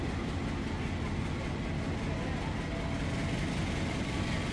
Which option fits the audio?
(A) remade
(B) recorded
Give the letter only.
B